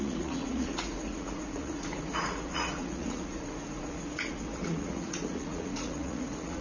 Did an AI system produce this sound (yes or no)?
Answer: yes